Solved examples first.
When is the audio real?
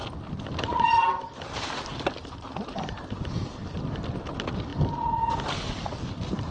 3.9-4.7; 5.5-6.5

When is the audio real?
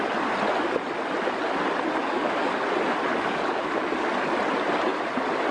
0.0-2.0; 2.5-3.1; 3.8-5.5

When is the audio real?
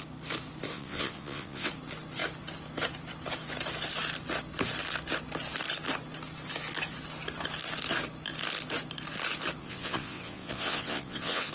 0.0-0.7; 1.7-9.6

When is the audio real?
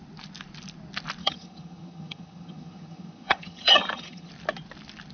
0.0-1.2; 4.3-5.1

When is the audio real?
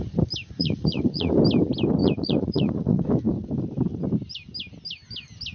0.0-0.4; 1.3-2.0; 3.0-5.5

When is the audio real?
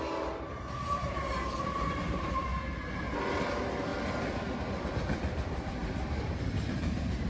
2.5-3.0; 3.9-4.9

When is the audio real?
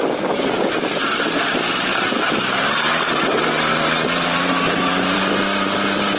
0.0-1.9; 2.9-3.7; 5.2-6.2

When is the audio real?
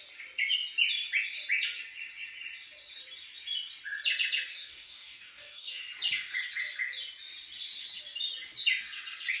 0.0-4.5; 5.8-9.4